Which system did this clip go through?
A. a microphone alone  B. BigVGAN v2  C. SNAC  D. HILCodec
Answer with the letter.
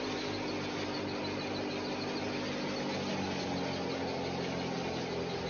A